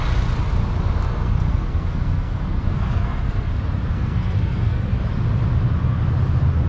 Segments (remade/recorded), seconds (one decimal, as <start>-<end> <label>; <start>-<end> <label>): 0.0-1.1 recorded; 1.1-3.5 remade; 3.5-3.9 recorded; 3.9-4.9 remade; 4.9-6.7 recorded